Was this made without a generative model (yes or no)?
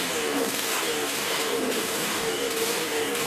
no